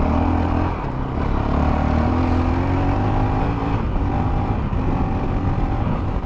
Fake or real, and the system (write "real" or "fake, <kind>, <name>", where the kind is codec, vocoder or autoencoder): real